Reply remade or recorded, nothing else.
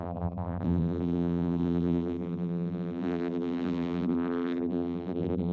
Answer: remade